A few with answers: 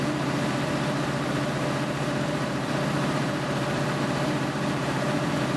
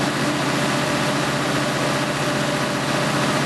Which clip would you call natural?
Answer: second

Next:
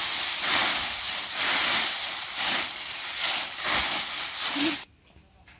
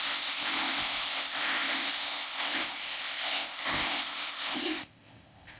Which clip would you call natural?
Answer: first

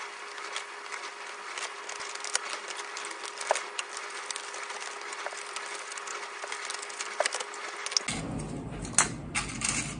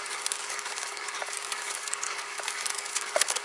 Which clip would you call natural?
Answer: first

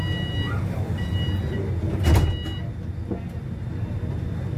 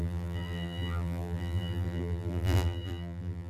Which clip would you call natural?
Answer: first